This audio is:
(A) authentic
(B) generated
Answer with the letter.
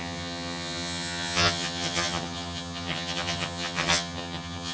B